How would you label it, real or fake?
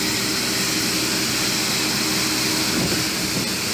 real